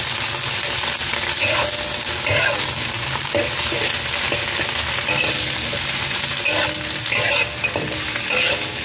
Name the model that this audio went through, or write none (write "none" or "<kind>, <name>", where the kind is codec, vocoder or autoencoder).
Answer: none